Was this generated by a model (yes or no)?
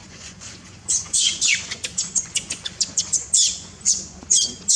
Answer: yes